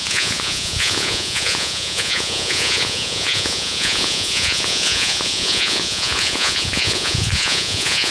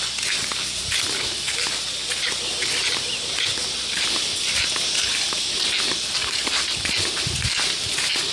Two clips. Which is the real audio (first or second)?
second